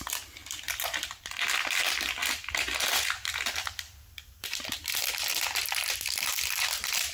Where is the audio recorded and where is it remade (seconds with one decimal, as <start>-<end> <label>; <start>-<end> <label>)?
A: 0.0-0.4 remade; 0.4-1.8 recorded; 1.8-2.2 remade; 2.2-3.0 recorded; 3.0-7.1 remade